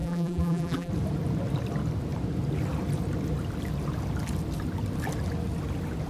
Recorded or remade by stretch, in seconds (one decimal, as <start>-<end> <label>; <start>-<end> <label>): 0.0-0.9 remade; 0.9-6.1 recorded